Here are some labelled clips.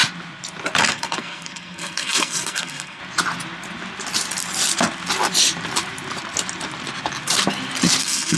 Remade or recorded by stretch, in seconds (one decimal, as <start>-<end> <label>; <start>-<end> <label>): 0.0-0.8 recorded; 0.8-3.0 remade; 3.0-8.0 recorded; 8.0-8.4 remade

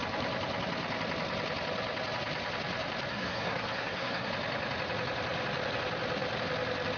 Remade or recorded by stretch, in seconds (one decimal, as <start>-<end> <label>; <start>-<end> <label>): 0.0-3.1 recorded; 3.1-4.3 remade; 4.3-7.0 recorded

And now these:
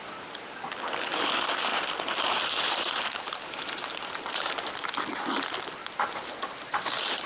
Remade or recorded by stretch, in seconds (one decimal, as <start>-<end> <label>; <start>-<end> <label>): 0.0-1.7 recorded; 1.7-4.7 remade; 4.7-5.8 recorded; 5.8-7.3 remade